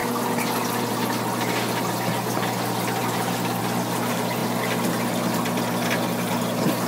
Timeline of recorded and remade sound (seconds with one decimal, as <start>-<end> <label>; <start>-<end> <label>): 0.0-6.9 recorded